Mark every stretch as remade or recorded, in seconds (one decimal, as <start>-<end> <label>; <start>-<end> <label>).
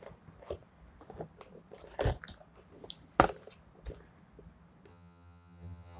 0.0-4.9 recorded; 4.9-6.0 remade